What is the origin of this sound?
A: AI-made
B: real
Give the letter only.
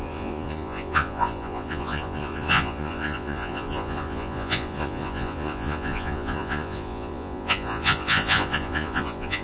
A